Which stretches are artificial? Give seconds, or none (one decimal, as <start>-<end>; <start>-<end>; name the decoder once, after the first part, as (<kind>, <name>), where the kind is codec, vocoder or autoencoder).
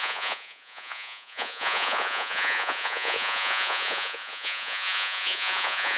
0.0-6.0 (vocoder, Vocos)